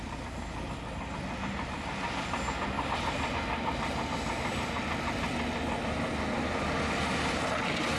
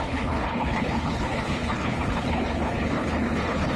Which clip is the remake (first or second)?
second